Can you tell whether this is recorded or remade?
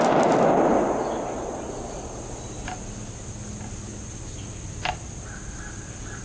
recorded